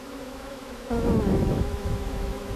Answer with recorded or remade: remade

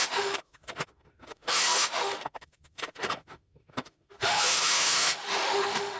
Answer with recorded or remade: remade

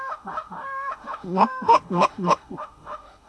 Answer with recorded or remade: remade